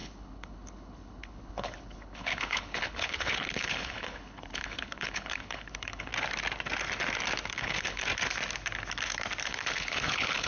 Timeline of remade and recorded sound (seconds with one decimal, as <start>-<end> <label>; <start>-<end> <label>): 0.0-6.1 remade; 6.1-7.5 recorded; 7.5-8.1 remade; 8.1-9.5 recorded; 9.5-10.5 remade